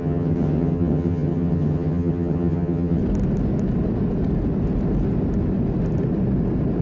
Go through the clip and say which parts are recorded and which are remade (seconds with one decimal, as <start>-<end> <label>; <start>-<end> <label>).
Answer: 0.0-3.0 remade; 3.0-6.8 recorded